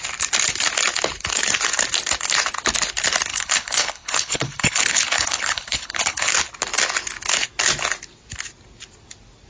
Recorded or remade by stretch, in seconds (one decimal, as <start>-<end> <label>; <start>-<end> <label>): 0.0-3.3 recorded; 3.3-6.3 remade; 6.3-9.5 recorded